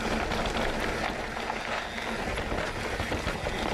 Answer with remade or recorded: recorded